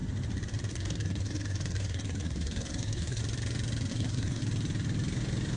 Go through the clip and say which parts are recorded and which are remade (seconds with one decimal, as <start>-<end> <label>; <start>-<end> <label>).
0.0-0.7 recorded; 0.7-3.2 remade; 3.2-3.9 recorded; 3.9-4.4 remade; 4.4-5.6 recorded